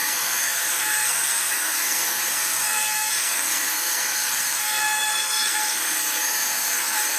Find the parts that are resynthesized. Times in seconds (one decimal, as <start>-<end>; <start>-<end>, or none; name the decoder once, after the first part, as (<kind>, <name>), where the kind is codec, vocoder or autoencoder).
0.0-7.2 (codec, SNAC)